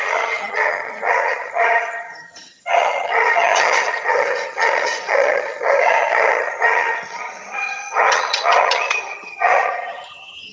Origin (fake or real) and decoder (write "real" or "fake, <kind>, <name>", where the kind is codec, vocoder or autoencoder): fake, vocoder, HiFi-GAN